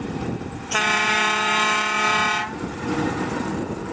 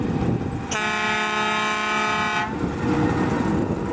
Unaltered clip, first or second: second